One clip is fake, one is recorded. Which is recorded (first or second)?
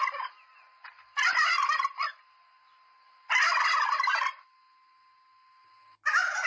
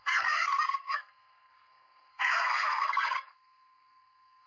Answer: first